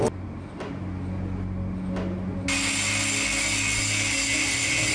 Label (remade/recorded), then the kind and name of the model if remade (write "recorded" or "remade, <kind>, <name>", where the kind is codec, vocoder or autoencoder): recorded